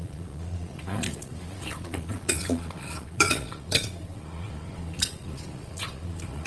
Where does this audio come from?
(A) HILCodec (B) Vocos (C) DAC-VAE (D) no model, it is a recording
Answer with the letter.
B